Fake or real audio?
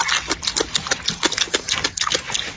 real